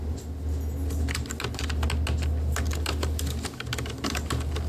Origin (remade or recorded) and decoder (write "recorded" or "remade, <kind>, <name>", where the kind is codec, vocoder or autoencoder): recorded